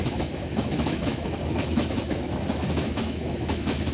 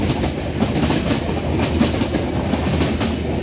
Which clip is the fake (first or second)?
first